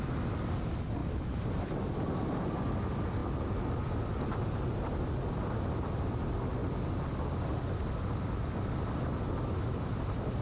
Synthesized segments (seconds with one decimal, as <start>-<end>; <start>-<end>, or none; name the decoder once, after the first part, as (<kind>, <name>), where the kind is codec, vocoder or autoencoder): 1.0-1.9 (vocoder, BigVGAN v2)